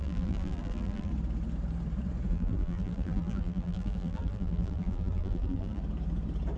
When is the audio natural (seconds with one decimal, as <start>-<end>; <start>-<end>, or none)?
1.1-2.3; 5.8-6.6